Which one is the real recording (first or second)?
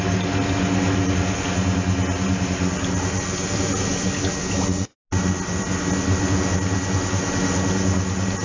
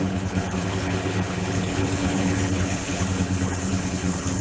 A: first